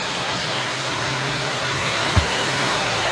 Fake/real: fake